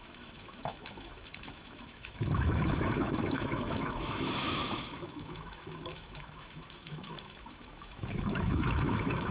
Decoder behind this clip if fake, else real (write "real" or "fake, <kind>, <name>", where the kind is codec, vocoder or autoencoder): fake, autoencoder, DAC-VAE